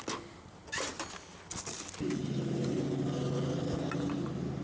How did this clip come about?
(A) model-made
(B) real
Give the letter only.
B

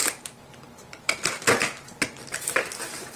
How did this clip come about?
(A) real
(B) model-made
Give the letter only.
A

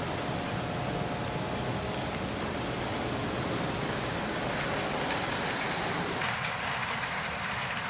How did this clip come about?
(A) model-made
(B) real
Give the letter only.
B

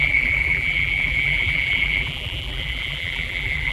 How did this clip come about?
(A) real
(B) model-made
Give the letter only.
B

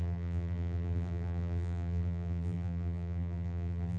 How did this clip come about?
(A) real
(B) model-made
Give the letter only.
B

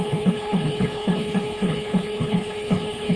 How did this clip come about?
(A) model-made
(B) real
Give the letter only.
A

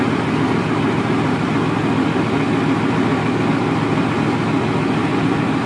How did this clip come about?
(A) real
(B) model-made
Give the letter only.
A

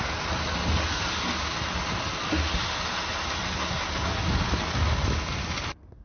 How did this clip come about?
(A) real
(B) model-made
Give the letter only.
A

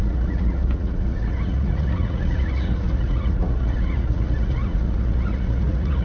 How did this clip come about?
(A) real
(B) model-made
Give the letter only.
B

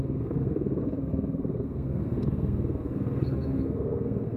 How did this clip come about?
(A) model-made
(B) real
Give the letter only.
A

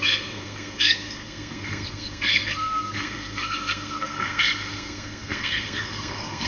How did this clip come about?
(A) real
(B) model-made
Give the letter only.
B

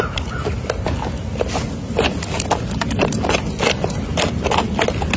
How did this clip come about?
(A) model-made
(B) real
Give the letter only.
B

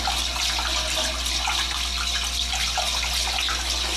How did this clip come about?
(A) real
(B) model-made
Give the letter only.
A